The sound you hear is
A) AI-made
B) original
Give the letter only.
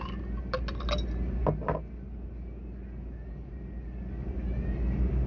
B